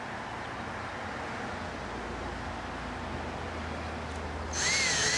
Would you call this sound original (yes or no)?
yes